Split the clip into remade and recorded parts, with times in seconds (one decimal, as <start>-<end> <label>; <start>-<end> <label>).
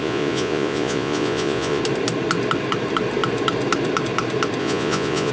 0.0-1.8 remade; 1.8-4.6 recorded; 4.6-5.3 remade